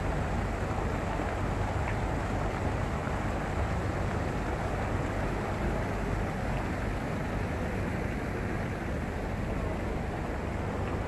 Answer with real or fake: real